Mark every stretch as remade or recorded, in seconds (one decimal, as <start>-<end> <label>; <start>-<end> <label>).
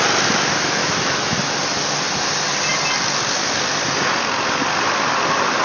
0.0-0.8 recorded; 0.8-1.5 remade; 1.5-5.6 recorded